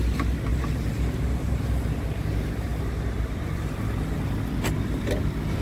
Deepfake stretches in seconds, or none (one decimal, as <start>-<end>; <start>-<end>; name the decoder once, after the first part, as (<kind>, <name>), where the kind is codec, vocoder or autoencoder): 0.5-1.5 (vocoder, BigVGAN v2); 2.7-3.7